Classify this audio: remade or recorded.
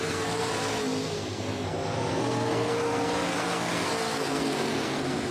remade